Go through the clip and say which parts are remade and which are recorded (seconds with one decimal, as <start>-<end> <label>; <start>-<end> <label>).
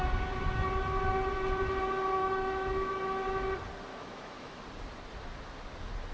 0.0-2.2 recorded; 2.2-3.0 remade; 3.0-3.9 recorded; 3.9-4.6 remade; 4.6-6.1 recorded